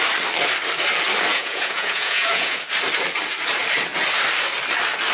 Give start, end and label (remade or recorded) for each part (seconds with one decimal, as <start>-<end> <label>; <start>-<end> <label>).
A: 0.0-1.3 recorded; 1.3-2.6 remade; 2.6-5.1 recorded